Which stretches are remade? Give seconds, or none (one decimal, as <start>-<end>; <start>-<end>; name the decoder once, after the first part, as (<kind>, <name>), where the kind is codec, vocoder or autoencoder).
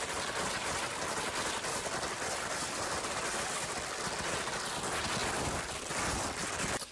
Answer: 0.6-1.8 (vocoder, BigVGAN v2); 5.2-5.9